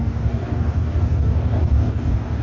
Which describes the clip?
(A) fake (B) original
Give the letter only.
A